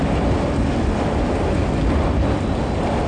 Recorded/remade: recorded